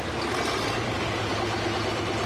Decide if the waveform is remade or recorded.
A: recorded